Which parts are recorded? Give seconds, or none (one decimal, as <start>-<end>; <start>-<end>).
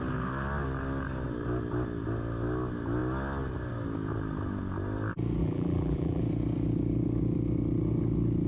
0.0-5.4; 6.2-8.5